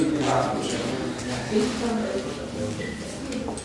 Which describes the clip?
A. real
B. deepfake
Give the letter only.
A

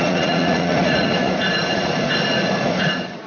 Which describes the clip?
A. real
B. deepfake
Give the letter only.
B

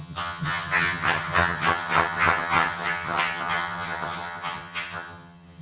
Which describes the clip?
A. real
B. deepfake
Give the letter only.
B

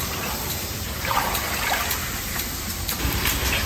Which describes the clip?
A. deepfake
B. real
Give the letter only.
A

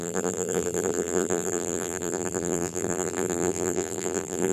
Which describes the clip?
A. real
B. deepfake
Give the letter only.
B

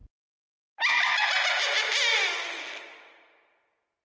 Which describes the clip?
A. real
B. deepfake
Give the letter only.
A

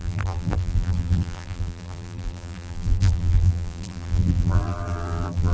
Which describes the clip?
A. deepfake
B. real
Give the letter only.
A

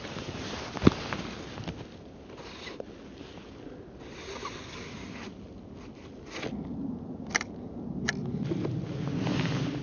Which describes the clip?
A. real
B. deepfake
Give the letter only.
A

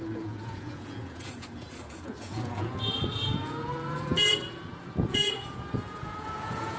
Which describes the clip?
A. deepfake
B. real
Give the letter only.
A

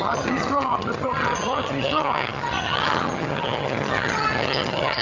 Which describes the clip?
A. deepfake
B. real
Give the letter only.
A